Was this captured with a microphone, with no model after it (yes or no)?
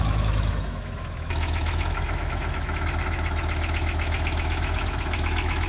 no